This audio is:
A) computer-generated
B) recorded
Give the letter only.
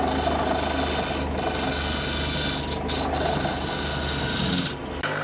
B